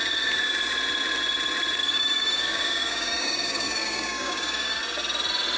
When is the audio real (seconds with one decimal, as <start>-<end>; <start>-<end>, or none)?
0.0-1.8; 4.8-5.6